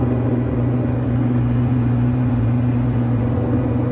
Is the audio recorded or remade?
remade